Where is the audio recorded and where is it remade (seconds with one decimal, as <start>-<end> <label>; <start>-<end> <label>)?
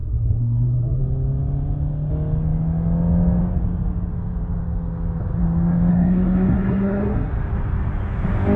0.0-1.0 remade; 1.0-5.9 recorded; 5.9-7.3 remade; 7.3-8.6 recorded